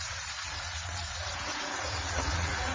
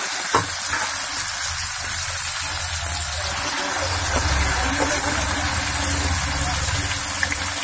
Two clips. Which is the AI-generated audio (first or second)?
first